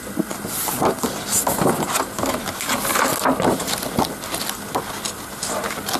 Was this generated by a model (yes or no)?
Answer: no